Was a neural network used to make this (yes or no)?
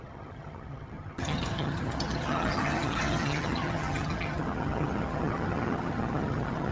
yes